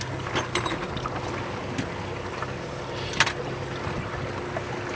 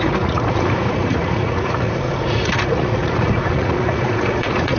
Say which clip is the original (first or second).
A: first